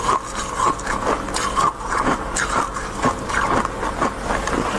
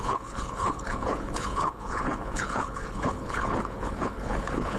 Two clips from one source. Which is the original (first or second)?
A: first